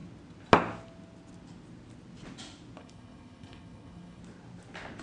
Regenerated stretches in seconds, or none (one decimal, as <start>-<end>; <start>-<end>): 2.8-4.2

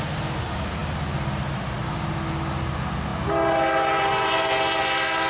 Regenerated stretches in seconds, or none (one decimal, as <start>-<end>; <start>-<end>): none